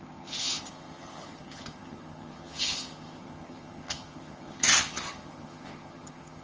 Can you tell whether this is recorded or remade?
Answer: remade